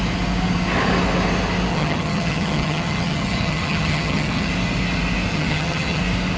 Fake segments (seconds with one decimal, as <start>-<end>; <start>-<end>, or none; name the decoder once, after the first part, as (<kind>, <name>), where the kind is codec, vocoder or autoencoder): 1.7-4.5 (vocoder, HiFi-GAN); 5.3-6.0